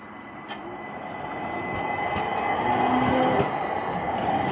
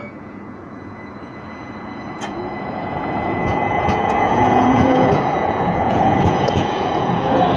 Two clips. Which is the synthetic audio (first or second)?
second